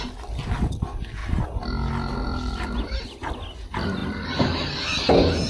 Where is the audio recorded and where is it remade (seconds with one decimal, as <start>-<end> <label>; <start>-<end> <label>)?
0.0-2.3 recorded; 2.3-3.4 remade; 3.4-5.5 recorded